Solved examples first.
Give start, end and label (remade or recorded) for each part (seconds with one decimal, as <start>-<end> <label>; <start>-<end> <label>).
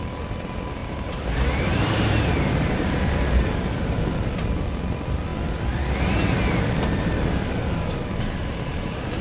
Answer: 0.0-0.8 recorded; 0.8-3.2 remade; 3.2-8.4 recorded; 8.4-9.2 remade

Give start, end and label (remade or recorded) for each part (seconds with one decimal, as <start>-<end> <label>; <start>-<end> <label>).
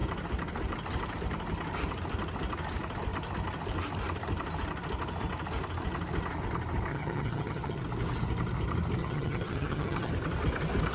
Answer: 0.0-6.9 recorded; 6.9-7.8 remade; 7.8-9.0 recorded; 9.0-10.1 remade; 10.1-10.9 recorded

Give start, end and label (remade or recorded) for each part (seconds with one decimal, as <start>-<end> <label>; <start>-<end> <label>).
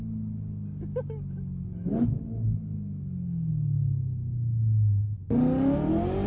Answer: 0.0-1.9 recorded; 1.9-3.5 remade; 3.5-6.3 recorded